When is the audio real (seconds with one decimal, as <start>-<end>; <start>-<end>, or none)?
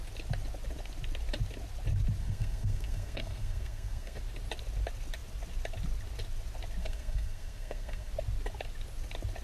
0.0-2.2; 4.2-6.8; 8.1-9.4